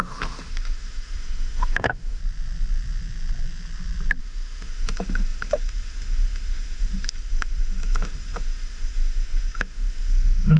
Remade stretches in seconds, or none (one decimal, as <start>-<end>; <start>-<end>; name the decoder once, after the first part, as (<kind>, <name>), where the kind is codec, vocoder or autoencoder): 0.0-2.2 (autoencoder, DAC-VAE); 4.2-10.6